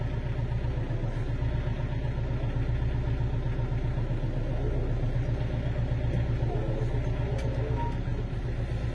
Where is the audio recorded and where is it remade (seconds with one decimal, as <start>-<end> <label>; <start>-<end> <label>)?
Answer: 0.0-8.9 recorded

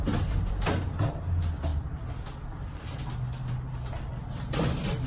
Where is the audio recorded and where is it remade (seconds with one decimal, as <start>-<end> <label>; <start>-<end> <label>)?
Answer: 0.0-5.1 recorded

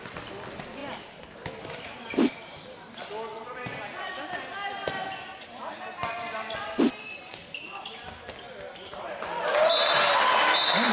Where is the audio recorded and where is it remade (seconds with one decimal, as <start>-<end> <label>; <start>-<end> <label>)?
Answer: 0.0-10.9 recorded

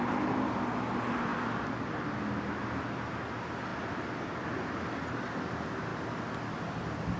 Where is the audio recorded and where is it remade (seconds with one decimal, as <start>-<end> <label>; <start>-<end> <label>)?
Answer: 0.0-7.2 recorded

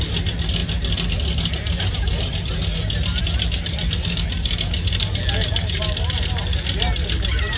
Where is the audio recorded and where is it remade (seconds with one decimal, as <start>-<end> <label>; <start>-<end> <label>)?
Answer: 0.0-7.6 recorded